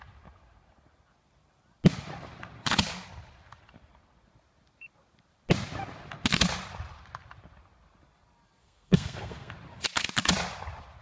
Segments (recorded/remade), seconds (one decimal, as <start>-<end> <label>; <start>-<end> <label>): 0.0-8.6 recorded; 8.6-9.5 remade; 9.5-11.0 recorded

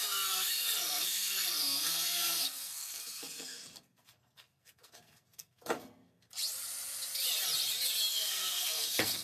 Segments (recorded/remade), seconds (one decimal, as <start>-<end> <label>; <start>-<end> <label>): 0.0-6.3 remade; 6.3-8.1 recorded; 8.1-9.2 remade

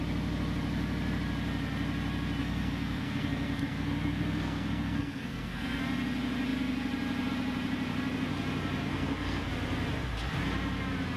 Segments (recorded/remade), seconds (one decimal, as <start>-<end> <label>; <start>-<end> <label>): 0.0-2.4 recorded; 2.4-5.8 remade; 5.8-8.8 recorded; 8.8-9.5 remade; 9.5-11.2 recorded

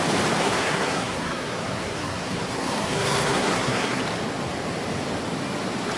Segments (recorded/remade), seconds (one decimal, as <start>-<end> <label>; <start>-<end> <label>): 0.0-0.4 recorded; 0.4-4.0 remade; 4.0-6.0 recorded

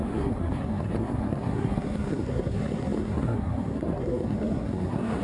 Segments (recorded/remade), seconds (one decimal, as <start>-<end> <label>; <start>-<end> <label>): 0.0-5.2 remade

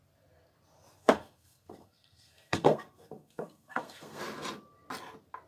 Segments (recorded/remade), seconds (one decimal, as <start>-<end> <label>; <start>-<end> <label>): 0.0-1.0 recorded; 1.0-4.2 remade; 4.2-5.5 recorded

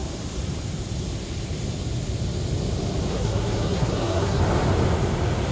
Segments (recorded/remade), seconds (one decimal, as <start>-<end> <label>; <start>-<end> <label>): 0.0-3.1 recorded; 3.1-4.4 remade; 4.4-5.5 recorded

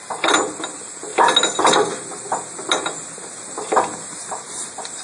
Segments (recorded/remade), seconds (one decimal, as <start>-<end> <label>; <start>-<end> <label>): 0.0-5.0 recorded